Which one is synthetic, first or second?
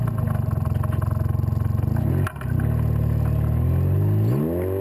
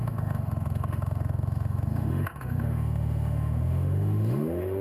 second